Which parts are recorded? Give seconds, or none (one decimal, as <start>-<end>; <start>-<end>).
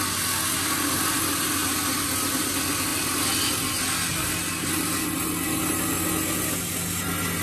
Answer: 0.0-7.4